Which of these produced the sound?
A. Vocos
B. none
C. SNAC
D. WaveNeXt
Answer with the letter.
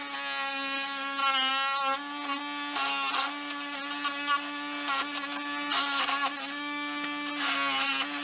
B